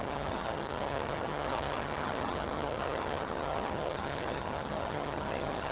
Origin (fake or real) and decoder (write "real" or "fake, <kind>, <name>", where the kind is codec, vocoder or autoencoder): fake, vocoder, HiFi-GAN